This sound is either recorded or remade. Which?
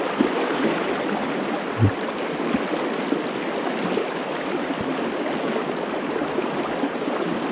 recorded